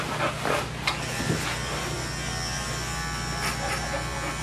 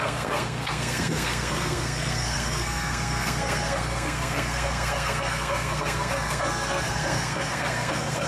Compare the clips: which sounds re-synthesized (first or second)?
second